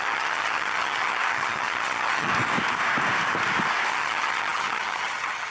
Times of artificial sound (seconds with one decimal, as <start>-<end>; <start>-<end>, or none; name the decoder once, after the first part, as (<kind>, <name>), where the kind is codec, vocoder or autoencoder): 0.0-2.3 (vocoder, HiFi-GAN); 3.9-5.5